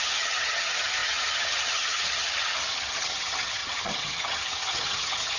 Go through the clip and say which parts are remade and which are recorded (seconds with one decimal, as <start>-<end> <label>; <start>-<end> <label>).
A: 0.0-5.4 remade